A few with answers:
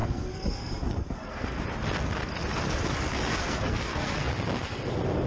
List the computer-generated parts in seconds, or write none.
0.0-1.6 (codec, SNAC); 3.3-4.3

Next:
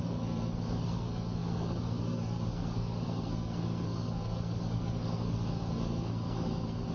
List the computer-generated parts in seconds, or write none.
0.0-6.9 (codec, SNAC)